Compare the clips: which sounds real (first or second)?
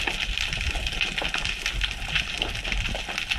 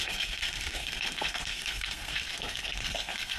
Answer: first